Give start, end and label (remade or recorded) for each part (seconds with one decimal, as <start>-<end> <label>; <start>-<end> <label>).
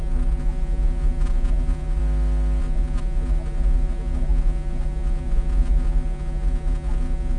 0.0-2.0 remade; 2.0-2.6 recorded; 2.6-7.4 remade